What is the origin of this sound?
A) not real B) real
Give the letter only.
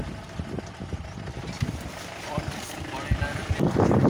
B